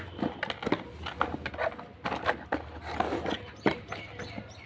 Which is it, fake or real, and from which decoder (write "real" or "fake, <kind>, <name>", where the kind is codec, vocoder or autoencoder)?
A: real